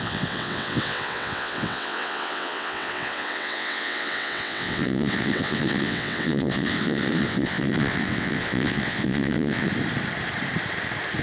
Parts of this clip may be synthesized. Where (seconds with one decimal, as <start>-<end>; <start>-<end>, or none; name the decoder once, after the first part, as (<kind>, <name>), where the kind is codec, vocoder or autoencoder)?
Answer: 0.0-9.7 (vocoder, WaveNeXt)